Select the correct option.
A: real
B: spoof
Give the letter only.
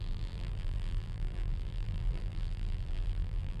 B